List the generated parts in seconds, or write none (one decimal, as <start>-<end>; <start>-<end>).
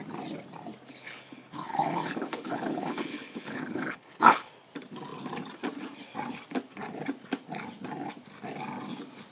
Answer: 0.9-4.5